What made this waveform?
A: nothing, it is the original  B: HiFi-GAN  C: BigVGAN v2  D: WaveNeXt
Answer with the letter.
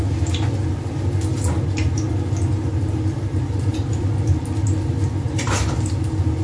A